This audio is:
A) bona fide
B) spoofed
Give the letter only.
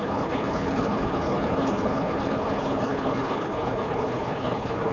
B